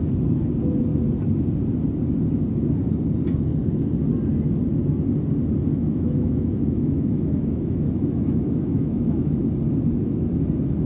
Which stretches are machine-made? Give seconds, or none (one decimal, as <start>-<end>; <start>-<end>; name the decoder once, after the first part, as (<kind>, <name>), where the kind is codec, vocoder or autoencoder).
5.7-9.5 (autoencoder, DAC-VAE)